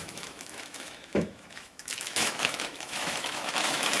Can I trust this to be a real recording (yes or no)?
no